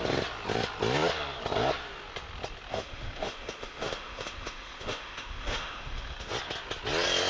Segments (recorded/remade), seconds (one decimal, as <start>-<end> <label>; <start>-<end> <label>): 0.0-2.7 recorded; 2.7-6.3 remade; 6.3-7.3 recorded